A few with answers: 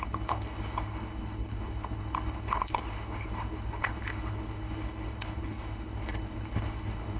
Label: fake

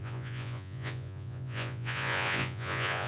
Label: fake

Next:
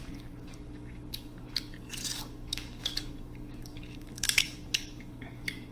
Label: fake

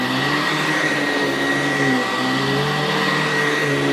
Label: real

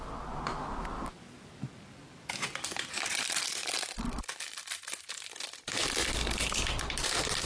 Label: real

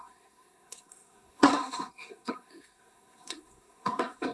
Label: fake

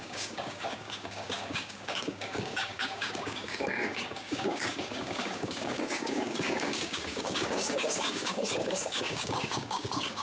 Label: fake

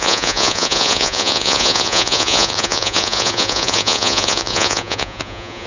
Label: fake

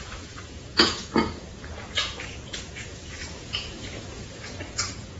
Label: fake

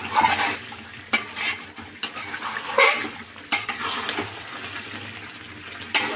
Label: real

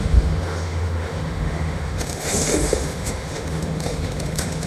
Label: fake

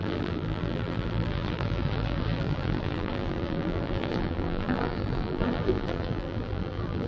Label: fake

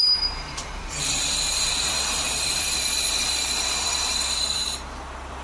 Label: fake